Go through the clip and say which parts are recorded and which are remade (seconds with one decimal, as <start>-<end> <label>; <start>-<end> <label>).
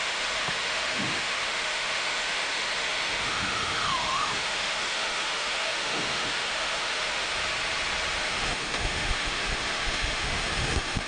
0.0-7.3 remade; 7.3-8.2 recorded; 8.2-11.1 remade